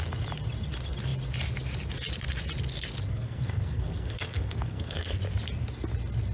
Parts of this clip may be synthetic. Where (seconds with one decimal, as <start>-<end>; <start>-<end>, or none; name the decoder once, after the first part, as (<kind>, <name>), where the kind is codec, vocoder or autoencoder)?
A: 3.1-5.2 (codec, SNAC)